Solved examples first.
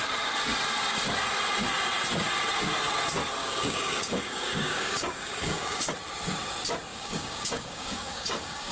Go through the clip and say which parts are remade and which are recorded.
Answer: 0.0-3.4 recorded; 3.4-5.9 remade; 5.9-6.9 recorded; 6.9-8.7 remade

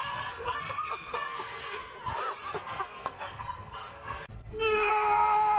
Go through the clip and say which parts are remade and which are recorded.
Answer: 0.0-1.8 remade; 1.8-2.5 recorded; 2.5-5.6 remade

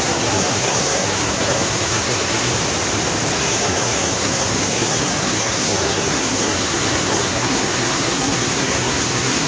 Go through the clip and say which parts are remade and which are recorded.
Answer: 0.0-2.5 remade; 2.5-3.4 recorded; 3.4-9.5 remade

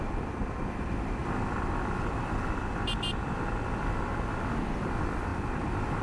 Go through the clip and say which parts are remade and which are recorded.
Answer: 0.0-1.2 recorded; 1.2-4.1 remade; 4.1-5.3 recorded; 5.3-6.0 remade

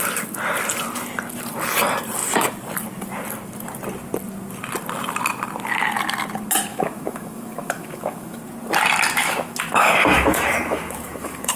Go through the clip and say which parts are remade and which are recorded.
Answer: 0.0-6.7 recorded; 6.7-8.4 remade; 8.4-9.2 recorded; 9.2-11.6 remade

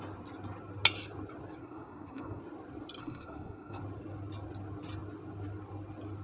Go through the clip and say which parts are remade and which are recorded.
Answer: 0.0-1.6 recorded; 1.6-2.4 remade; 2.4-3.0 recorded; 3.0-3.8 remade; 3.8-6.2 recorded